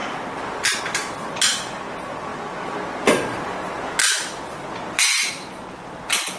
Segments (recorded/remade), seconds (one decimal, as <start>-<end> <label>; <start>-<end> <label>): 0.0-6.4 recorded